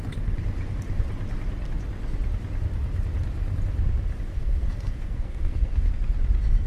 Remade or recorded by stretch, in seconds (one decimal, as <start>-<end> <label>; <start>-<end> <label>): 0.0-4.3 recorded; 4.3-5.9 remade; 5.9-6.7 recorded